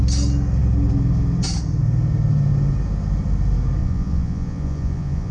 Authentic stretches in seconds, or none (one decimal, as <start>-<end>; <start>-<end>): 0.0-3.8